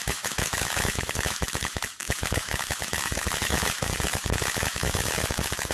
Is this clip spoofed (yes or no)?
yes